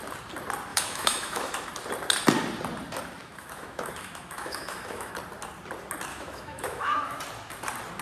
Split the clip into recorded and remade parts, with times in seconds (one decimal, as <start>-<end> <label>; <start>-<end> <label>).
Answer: 0.0-0.7 recorded; 0.7-1.7 remade; 1.7-3.2 recorded; 3.2-5.1 remade; 5.1-6.1 recorded; 6.1-7.2 remade; 7.2-8.0 recorded